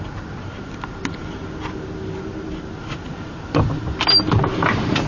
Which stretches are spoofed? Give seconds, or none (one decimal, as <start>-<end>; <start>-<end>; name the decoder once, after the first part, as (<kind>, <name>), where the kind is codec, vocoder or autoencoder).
none